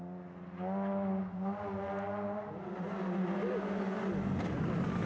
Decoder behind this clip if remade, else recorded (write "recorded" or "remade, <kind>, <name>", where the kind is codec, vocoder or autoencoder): recorded